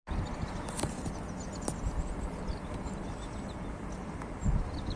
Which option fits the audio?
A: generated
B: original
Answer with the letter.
B